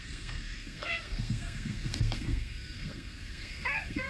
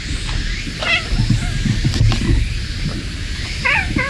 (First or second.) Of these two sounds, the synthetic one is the first